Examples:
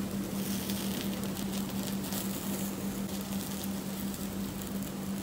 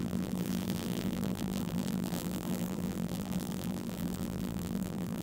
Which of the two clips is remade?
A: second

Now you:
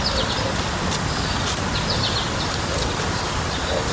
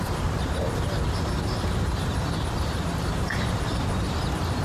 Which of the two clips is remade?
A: second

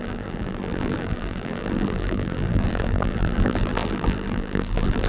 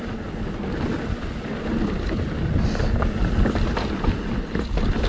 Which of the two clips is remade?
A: first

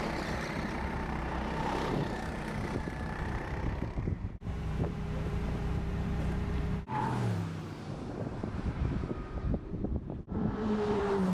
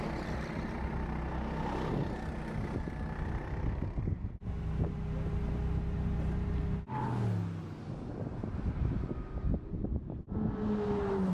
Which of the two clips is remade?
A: first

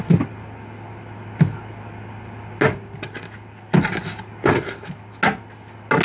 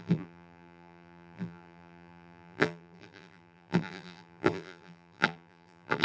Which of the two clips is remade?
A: second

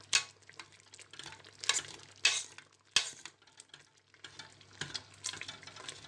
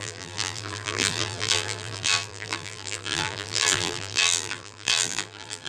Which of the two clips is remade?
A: second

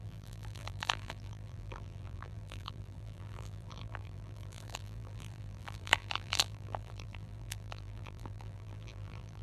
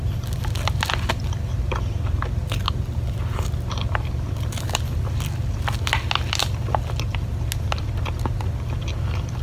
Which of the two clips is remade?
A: first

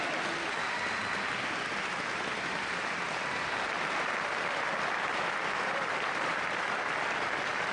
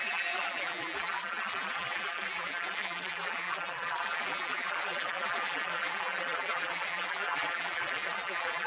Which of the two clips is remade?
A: second